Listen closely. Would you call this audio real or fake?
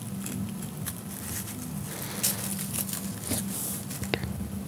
real